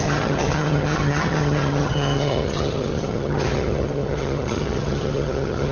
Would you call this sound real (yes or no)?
no